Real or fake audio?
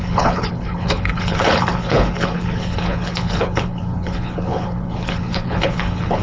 fake